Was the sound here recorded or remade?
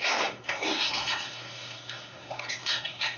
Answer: remade